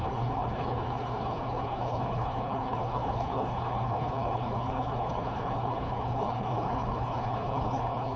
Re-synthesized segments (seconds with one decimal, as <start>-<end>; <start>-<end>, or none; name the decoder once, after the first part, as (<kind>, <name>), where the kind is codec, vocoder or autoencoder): 0.0-8.2 (codec, HILCodec)